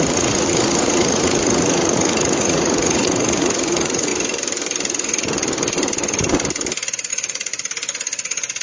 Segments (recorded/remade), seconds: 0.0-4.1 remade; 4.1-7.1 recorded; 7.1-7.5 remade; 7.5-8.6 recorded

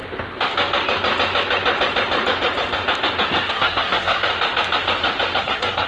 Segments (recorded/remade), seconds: 0.0-3.5 recorded; 3.5-4.3 remade; 4.3-5.4 recorded; 5.4-5.9 remade

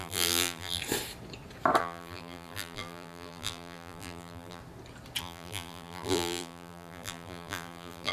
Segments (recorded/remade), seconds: 0.0-0.8 remade; 0.8-1.8 recorded; 1.8-4.6 remade; 4.6-5.2 recorded; 5.2-8.1 remade

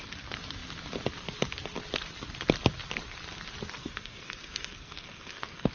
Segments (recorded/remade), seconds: 0.0-3.8 recorded; 3.8-5.7 remade

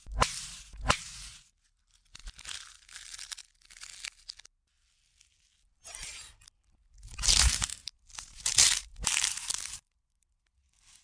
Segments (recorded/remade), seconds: 0.0-2.2 remade; 2.2-2.7 recorded; 2.7-3.4 remade; 3.4-7.1 recorded; 7.1-11.0 remade

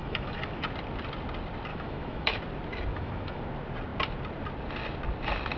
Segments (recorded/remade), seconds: 0.0-0.6 remade; 0.6-1.7 recorded; 1.7-2.4 remade; 2.4-2.9 recorded; 2.9-3.4 remade; 3.4-5.6 recorded

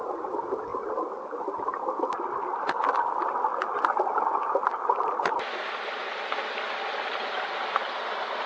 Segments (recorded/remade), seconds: 0.0-8.5 recorded

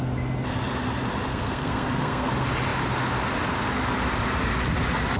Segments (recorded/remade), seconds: 0.0-1.3 recorded; 1.3-2.3 remade; 2.3-5.2 recorded